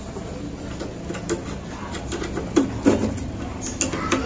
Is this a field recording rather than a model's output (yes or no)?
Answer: yes